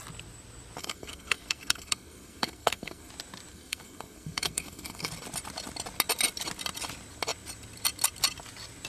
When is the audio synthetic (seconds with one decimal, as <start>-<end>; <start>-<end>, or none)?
0.8-3.1; 3.5-5.1